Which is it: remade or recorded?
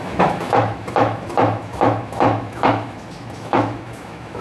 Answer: remade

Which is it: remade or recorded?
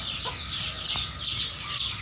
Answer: recorded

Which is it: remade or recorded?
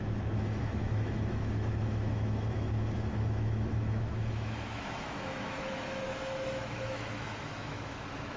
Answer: remade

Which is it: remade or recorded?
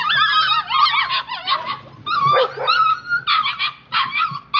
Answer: recorded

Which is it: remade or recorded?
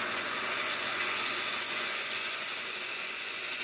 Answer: remade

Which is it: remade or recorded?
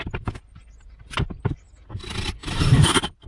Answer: recorded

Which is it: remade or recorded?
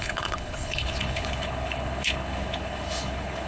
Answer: remade